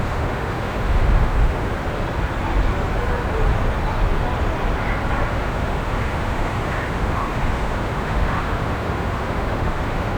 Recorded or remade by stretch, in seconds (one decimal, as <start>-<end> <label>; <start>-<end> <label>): 0.0-1.7 remade; 1.7-5.3 recorded; 5.3-10.2 remade